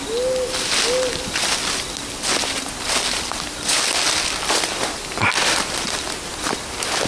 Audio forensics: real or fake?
real